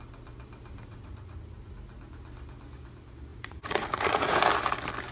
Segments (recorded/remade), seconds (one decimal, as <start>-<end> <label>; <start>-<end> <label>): 0.0-0.9 recorded; 0.9-1.7 remade; 1.7-3.3 recorded; 3.3-4.4 remade; 4.4-5.1 recorded